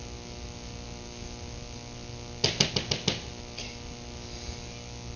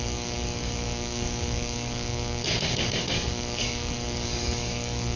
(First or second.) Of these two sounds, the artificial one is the second